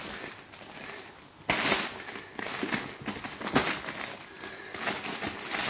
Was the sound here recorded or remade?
recorded